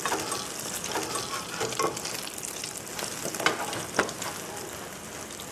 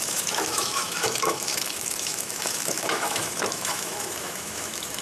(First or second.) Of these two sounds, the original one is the first